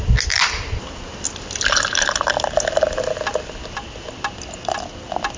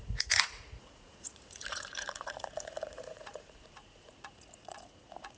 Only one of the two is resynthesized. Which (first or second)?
second